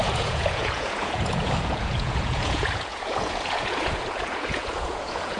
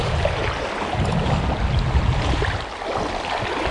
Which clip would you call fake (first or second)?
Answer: first